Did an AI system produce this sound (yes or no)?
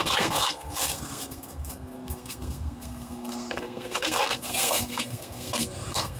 yes